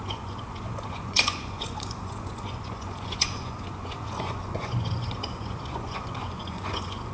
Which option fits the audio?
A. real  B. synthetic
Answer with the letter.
B